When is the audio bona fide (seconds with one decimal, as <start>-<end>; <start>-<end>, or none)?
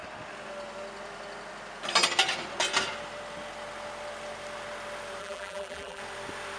0.0-5.2; 6.0-6.6